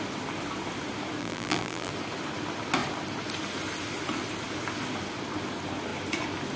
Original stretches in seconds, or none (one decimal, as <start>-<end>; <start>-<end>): 0.0-1.2; 1.9-6.6